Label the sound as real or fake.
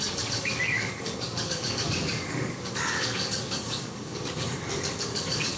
fake